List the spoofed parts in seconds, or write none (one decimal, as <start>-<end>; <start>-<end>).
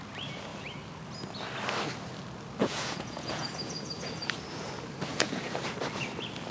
2.6-3.9; 5.1-5.6